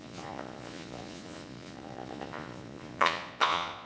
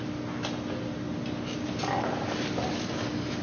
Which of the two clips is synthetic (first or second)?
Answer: first